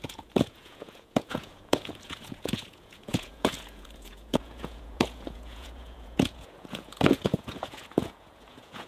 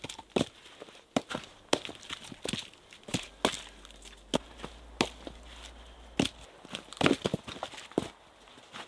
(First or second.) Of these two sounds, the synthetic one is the first